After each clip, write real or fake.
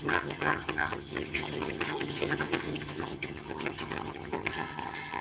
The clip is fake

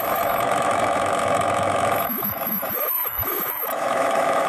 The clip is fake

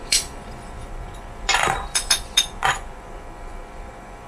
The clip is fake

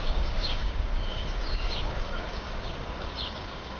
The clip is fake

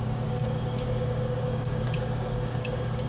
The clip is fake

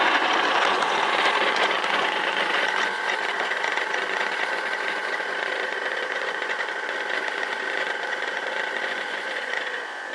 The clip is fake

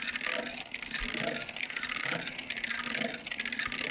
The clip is real